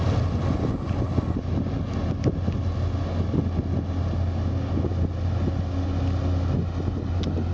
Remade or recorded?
recorded